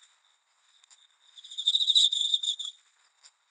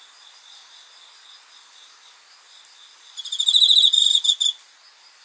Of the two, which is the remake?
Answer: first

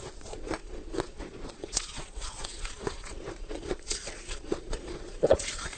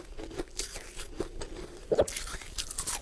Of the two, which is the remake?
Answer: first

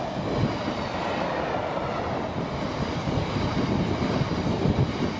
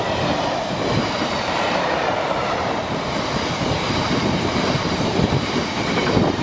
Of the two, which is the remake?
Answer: second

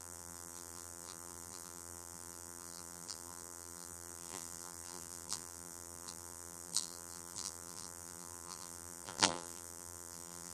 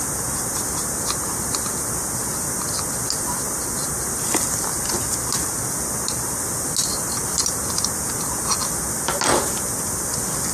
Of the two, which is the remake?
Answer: first